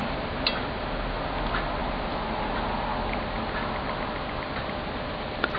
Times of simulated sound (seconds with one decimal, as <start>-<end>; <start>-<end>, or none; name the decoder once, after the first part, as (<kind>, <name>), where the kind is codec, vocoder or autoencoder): none

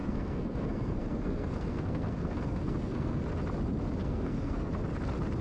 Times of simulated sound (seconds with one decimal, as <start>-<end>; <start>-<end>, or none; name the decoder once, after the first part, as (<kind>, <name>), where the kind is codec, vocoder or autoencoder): 0.0-3.2 (codec, SNAC); 4.0-4.7

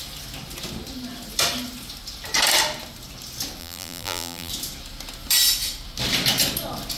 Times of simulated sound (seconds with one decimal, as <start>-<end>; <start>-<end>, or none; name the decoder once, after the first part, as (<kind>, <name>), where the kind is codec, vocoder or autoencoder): 3.6-4.5 (vocoder, BigVGAN v2)